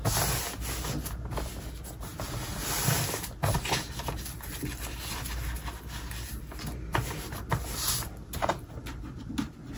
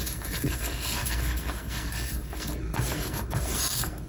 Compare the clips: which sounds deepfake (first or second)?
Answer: second